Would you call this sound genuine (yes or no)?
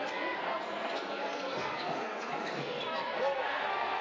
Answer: no